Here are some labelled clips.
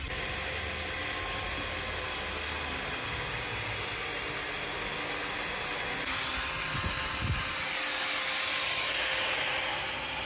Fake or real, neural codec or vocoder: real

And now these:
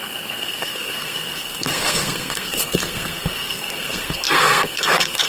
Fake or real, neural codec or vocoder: fake, codec, SNAC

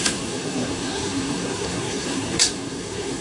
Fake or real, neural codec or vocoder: fake, codec, SNAC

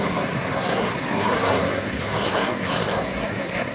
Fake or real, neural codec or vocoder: fake, codec, SNAC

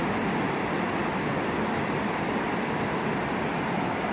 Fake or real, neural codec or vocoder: real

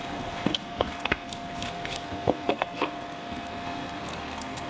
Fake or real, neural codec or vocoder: fake, codec, SNAC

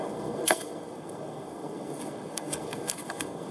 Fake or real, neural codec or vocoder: fake, codec, SNAC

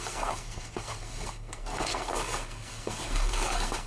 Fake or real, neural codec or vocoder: fake, codec, SNAC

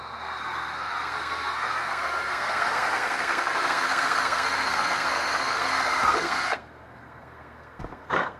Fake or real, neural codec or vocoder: fake, codec, SNAC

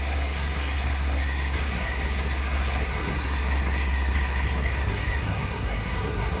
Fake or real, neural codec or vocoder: fake, codec, SNAC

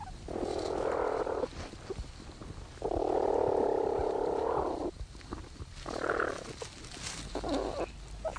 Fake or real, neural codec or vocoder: real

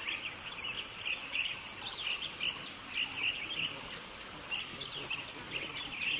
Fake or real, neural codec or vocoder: real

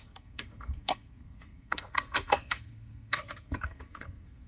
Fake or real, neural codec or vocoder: fake, codec, SNAC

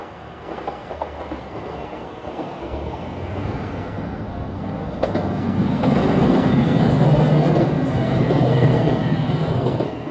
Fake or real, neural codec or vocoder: fake, codec, SNAC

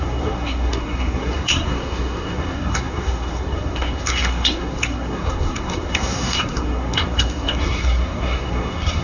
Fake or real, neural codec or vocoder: fake, codec, SNAC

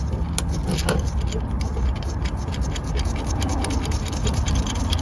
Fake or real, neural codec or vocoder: real